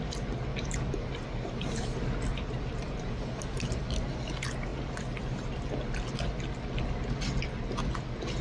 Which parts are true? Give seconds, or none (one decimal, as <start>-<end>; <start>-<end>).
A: 0.0-0.5; 1.8-2.3; 4.1-8.4